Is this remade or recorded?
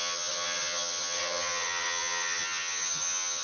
remade